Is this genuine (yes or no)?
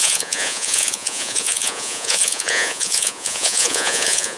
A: no